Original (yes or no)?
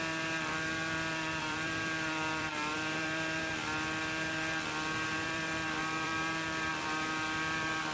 no